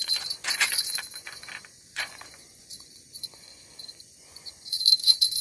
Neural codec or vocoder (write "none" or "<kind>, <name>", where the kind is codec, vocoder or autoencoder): vocoder, Vocos